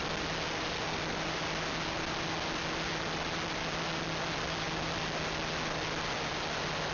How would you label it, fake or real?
real